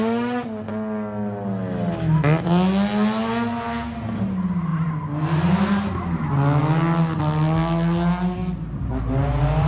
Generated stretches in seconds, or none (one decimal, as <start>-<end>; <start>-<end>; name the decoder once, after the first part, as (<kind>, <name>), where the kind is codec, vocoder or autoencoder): none